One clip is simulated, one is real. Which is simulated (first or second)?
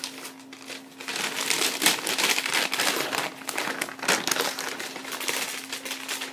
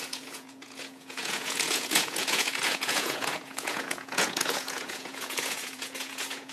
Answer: second